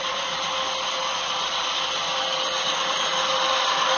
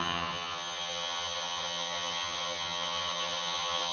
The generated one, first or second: second